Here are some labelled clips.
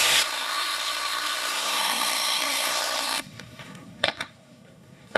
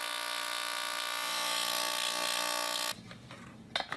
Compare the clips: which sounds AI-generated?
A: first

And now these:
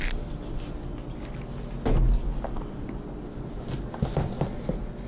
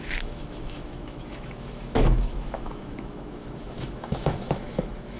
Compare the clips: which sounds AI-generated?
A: second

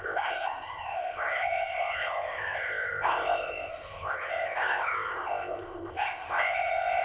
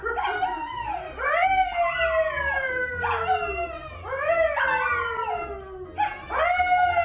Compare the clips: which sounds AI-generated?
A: first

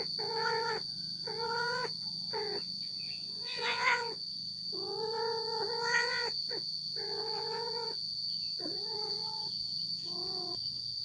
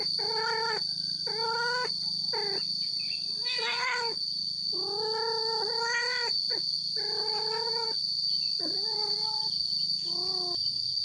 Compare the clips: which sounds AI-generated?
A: first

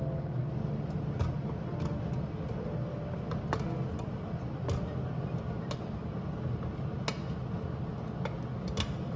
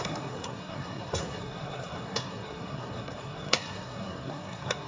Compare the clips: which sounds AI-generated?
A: second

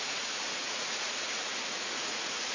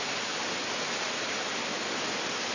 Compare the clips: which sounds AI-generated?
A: first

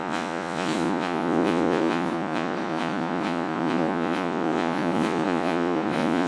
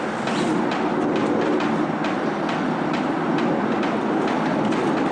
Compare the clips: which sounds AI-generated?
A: first